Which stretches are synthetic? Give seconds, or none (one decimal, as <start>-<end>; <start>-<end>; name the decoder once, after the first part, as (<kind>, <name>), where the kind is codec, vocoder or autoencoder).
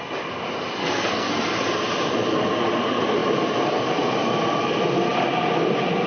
0.8-1.3 (codec, SNAC)